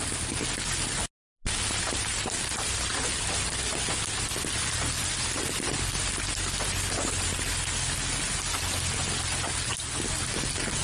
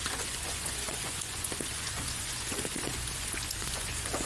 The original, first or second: first